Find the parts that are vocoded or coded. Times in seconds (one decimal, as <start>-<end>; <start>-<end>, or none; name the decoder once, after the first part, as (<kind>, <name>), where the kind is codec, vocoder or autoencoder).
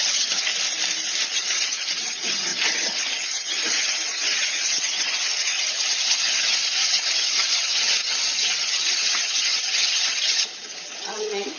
0.0-0.5 (vocoder, HiFi-GAN); 1.3-11.6